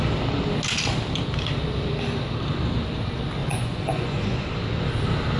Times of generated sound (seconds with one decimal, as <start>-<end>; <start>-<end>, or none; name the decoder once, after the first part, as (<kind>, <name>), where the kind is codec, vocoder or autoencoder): 3.4-4.4 (vocoder, Vocos)